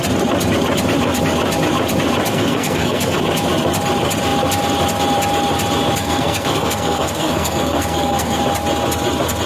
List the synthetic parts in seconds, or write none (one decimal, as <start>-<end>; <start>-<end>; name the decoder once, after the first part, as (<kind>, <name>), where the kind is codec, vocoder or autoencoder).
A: 2.3-3.2 (codec, SNAC); 6.0-8.4